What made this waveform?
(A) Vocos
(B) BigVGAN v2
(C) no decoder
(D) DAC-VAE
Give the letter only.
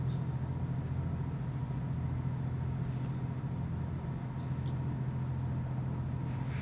C